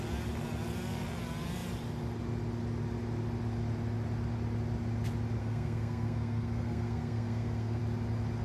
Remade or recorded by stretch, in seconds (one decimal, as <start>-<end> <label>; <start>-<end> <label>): 0.0-5.4 recorded; 5.4-7.8 remade; 7.8-8.4 recorded